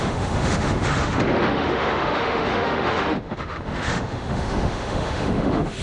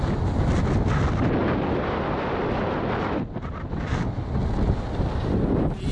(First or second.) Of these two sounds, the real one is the second